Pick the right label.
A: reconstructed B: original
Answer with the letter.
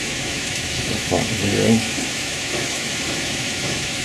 A